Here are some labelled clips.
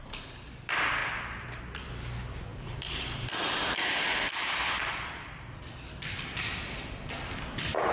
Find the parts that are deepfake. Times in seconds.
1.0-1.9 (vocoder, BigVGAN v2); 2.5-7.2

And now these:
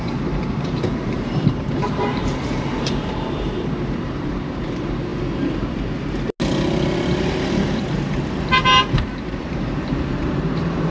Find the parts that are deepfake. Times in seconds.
0.0-5.1 (vocoder, BigVGAN v2); 7.2-10.9

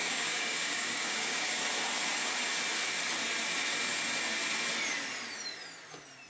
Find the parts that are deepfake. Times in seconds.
0.0-1.6 (codec, DAC)

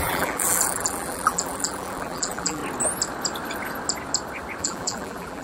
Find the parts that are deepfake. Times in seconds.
0.0-2.6 (vocoder, BigVGAN v2); 4.6-5.4